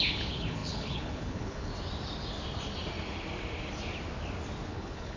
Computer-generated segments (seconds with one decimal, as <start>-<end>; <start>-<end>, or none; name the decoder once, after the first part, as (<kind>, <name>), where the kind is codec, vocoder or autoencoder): 0.0-1.7 (codec, HILCodec); 4.7-5.2